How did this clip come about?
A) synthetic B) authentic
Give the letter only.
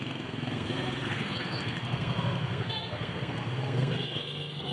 A